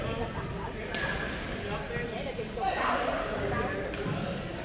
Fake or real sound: real